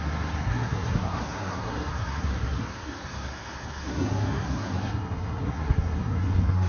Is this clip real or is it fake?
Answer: fake